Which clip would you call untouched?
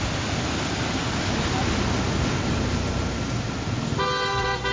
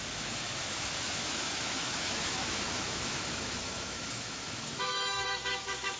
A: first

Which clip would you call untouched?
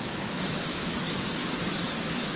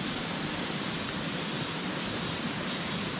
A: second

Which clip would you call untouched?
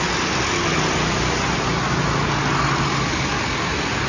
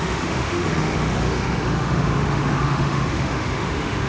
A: first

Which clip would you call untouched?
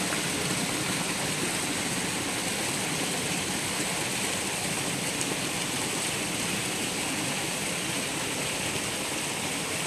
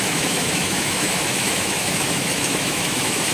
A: first